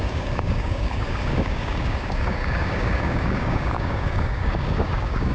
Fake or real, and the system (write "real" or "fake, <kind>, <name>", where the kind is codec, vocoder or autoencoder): fake, codec, DAC